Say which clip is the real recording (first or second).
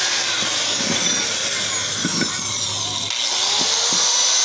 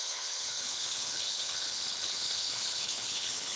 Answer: first